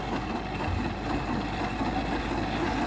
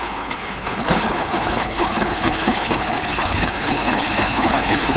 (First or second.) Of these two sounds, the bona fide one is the first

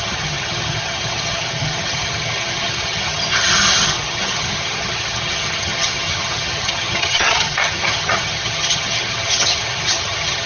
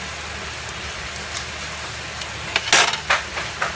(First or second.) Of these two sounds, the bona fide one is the second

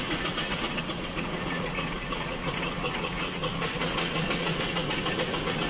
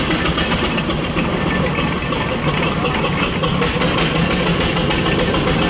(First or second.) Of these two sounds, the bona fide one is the second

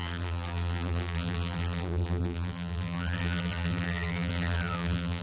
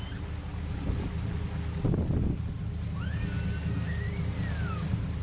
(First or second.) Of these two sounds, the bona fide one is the second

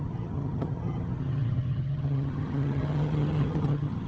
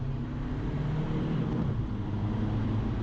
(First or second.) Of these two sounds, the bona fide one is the second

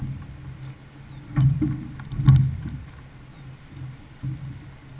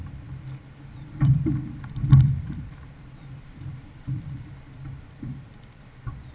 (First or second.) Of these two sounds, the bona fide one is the first